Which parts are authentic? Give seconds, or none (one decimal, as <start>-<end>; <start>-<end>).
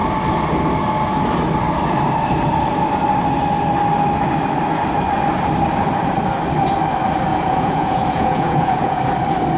0.0-7.3; 9.0-9.6